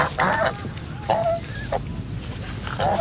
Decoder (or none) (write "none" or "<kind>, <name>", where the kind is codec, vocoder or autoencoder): none